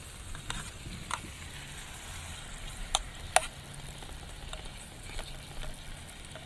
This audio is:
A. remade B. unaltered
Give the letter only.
B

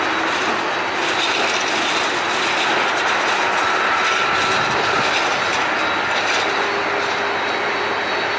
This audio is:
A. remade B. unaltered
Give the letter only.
B